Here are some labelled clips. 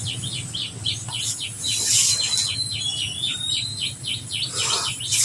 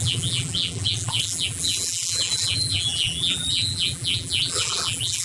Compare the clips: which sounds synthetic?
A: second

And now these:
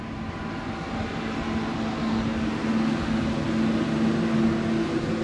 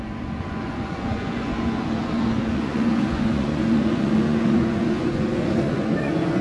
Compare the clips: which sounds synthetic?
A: second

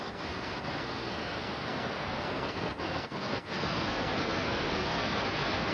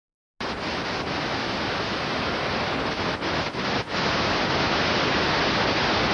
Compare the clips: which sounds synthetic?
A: first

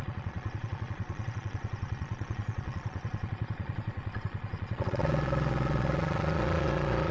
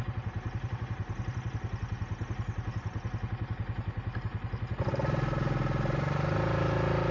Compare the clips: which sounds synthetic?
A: first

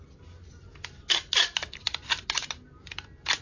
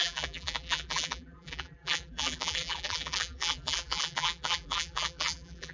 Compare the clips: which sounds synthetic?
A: second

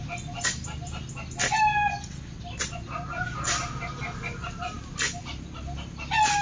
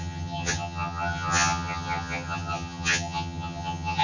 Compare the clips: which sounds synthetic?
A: second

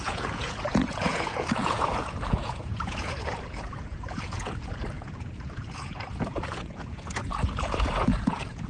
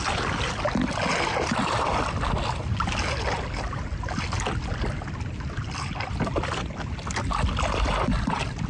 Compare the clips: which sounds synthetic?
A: first